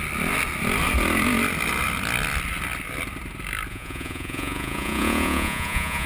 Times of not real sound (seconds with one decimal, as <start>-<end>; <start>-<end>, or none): 3.7-6.1